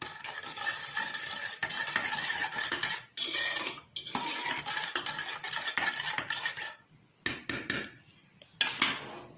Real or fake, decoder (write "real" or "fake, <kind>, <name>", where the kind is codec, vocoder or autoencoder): real